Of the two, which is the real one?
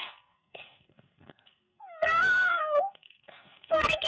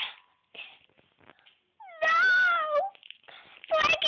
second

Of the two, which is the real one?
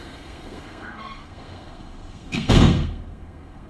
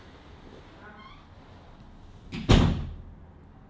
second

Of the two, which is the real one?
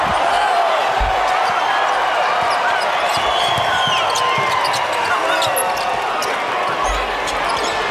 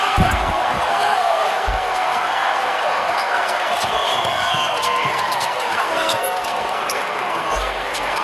first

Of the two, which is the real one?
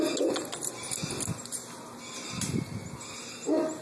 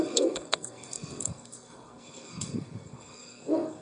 first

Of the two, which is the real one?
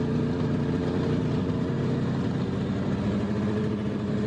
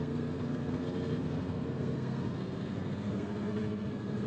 first